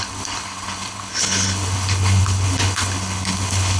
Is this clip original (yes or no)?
no